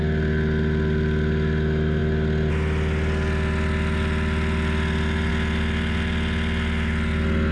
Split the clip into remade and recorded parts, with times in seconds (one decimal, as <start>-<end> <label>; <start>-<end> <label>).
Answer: 0.0-7.5 recorded